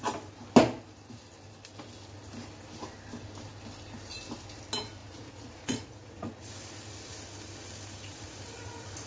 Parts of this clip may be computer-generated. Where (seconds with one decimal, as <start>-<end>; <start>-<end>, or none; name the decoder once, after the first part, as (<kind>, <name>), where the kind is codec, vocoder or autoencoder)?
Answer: 5.0-6.5 (vocoder, Vocos)

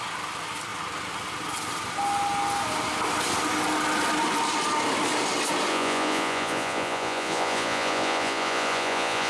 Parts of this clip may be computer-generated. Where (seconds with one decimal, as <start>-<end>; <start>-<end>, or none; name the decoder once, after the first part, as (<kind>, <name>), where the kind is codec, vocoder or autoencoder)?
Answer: 5.7-9.3 (vocoder, Vocos)